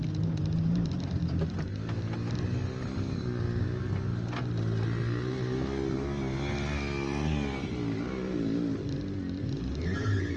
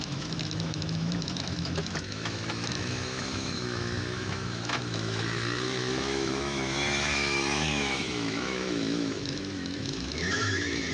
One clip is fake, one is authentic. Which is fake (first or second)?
second